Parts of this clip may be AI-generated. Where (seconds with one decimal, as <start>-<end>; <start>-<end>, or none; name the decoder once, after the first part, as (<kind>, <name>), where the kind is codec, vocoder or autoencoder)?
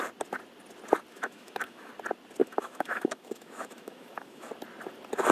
1.1-1.9 (autoencoder, DAC-VAE); 2.4-4.5